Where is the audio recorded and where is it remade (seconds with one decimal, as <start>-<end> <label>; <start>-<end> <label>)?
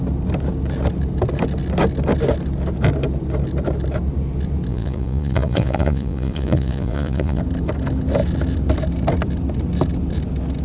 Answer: 0.0-4.7 recorded; 4.7-7.4 remade; 7.4-10.6 recorded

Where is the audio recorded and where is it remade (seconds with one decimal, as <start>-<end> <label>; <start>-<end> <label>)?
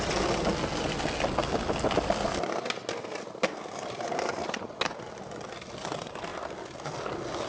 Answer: 0.0-7.5 recorded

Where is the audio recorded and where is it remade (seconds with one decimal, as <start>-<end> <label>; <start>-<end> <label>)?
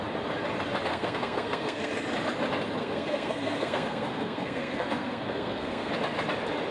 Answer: 0.0-0.9 recorded; 0.9-1.9 remade; 1.9-2.8 recorded; 2.8-5.9 remade; 5.9-6.7 recorded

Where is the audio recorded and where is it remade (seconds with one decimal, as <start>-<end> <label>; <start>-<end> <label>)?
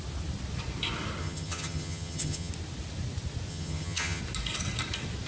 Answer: 0.0-1.2 recorded; 1.2-2.5 remade; 2.5-3.5 recorded; 3.5-4.2 remade; 4.2-5.3 recorded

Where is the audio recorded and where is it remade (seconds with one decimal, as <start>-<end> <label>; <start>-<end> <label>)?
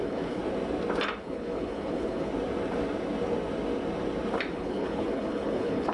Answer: 0.0-0.4 remade; 0.4-1.2 recorded; 1.2-2.3 remade; 2.3-4.5 recorded; 4.5-5.9 remade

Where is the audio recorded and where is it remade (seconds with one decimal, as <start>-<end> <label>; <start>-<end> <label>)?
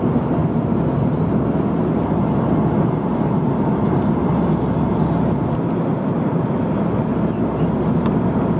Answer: 0.0-8.6 recorded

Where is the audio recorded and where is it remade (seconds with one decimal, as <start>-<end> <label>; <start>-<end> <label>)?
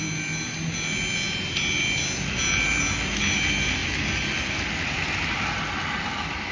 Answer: 0.0-6.5 recorded